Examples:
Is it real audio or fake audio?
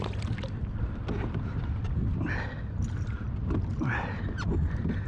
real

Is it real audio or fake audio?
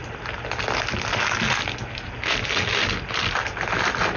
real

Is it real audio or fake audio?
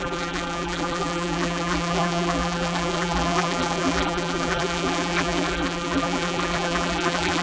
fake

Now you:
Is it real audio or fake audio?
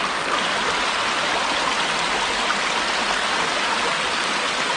real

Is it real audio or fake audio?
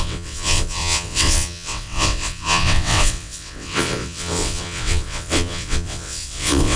fake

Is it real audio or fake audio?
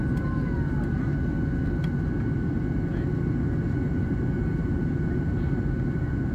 real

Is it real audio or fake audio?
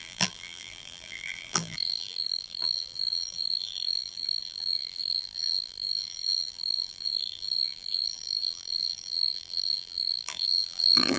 fake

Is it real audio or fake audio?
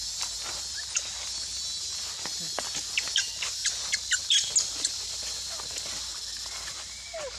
real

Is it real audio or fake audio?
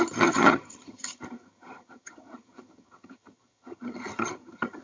fake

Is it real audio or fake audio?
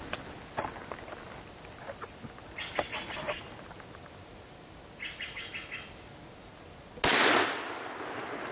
real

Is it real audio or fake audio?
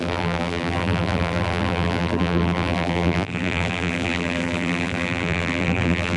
fake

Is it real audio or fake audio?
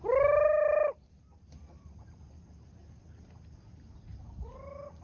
real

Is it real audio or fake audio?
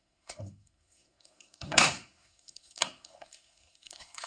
fake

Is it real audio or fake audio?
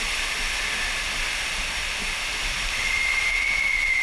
real